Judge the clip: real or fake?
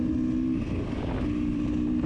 real